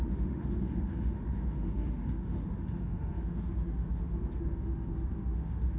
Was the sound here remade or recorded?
remade